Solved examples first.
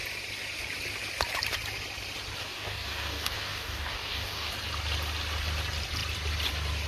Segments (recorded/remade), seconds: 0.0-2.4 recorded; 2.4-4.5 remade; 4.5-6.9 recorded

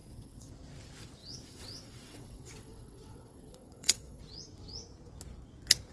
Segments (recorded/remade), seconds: 0.0-0.5 remade; 0.5-1.2 recorded; 1.2-4.2 remade; 4.2-5.9 recorded

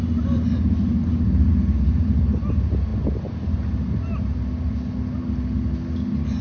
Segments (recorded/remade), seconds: 0.0-6.4 recorded